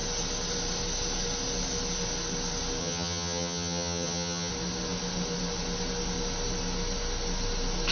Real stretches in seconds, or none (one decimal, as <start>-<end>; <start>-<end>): 0.0-2.8; 4.5-7.9